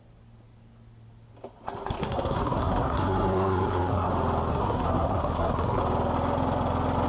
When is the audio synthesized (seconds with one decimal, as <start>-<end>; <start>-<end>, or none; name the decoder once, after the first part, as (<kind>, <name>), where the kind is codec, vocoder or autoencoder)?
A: 2.0-4.1 (codec, SNAC); 4.5-5.8